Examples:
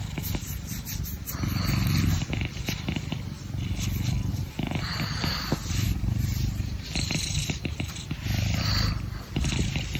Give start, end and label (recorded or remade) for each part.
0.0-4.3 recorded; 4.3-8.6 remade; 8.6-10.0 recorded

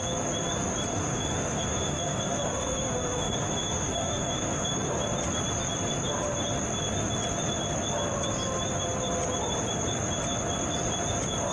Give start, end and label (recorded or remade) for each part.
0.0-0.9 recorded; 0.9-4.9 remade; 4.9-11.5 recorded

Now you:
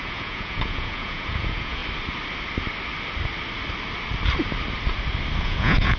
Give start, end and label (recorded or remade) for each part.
0.0-1.8 remade; 1.8-5.4 recorded; 5.4-6.0 remade

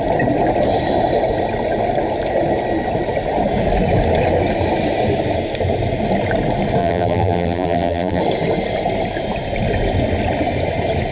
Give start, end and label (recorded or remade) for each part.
0.0-6.8 recorded; 6.8-8.2 remade; 8.2-11.1 recorded

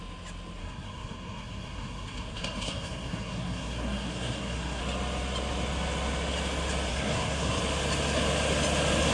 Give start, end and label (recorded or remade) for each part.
0.0-0.6 recorded; 0.6-4.8 remade; 4.8-6.9 recorded; 6.9-7.6 remade; 7.6-9.1 recorded

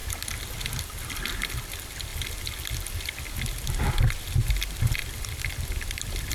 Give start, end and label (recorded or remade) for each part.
0.0-5.0 recorded; 5.0-6.3 remade